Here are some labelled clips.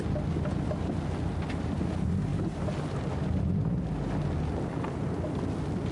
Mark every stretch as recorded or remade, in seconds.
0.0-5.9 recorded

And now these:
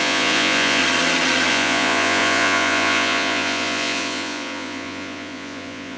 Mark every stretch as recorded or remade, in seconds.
0.0-0.8 remade; 0.8-1.5 recorded; 1.5-6.0 remade

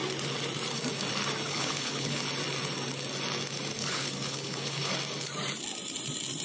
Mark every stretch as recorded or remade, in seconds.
0.0-1.5 recorded; 1.5-2.2 remade; 2.2-3.8 recorded; 3.8-4.9 remade; 4.9-6.4 recorded

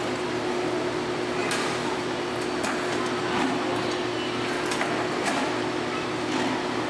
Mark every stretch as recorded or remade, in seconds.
0.0-1.4 recorded; 1.4-2.3 remade; 2.3-6.9 recorded

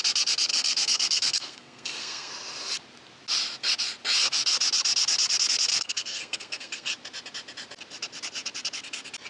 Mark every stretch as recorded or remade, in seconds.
0.0-0.5 recorded; 0.5-2.3 remade; 2.3-5.7 recorded; 5.7-6.9 remade; 6.9-9.3 recorded

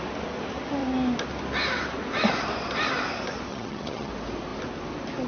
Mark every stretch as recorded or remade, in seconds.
0.0-3.5 recorded; 3.5-4.1 remade; 4.1-5.3 recorded

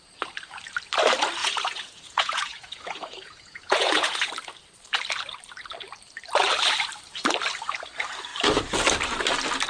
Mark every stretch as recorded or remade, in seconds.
0.0-1.4 recorded; 1.4-4.3 remade; 4.3-9.7 recorded

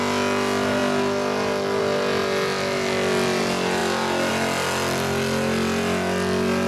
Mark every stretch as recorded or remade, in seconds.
0.0-6.7 recorded